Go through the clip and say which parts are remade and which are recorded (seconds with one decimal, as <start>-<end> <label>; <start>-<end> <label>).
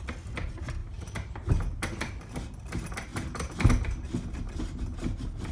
0.0-5.5 recorded